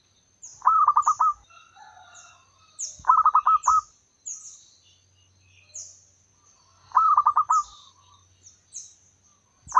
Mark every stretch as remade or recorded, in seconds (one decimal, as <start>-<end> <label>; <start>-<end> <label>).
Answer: 0.0-9.8 recorded